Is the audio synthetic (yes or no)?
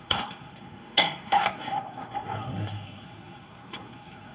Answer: yes